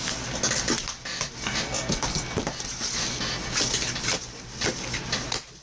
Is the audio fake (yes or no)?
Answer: no